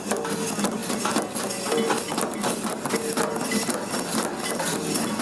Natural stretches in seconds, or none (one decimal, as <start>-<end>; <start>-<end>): 0.0-5.2